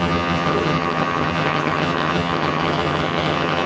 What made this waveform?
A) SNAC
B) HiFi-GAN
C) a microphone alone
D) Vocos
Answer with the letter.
B